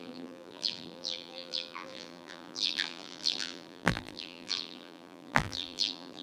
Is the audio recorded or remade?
remade